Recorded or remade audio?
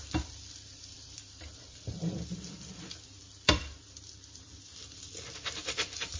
remade